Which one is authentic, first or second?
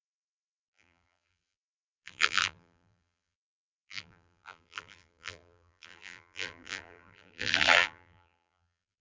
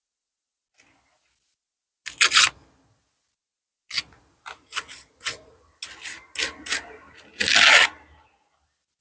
second